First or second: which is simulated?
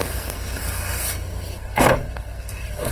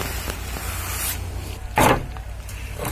first